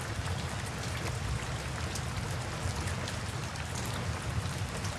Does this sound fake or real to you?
real